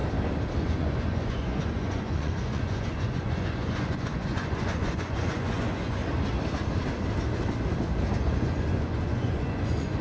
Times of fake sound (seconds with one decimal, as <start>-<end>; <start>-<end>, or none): 0.6-6.0; 8.2-10.0